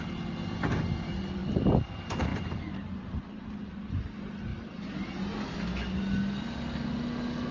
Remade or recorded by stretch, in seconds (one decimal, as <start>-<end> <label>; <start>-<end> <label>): 0.0-7.5 recorded